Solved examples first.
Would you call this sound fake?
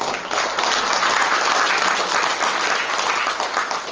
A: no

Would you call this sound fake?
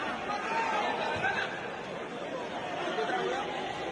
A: no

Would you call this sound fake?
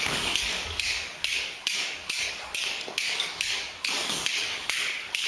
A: yes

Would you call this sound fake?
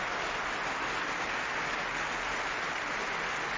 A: no